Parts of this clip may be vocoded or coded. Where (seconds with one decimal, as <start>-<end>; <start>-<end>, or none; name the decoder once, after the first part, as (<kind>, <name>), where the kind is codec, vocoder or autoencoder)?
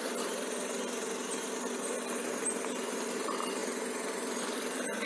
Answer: none